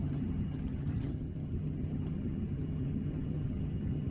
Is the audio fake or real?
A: fake